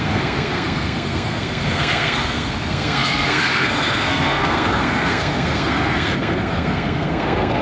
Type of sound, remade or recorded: remade